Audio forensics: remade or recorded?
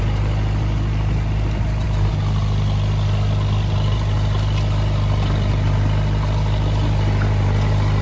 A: recorded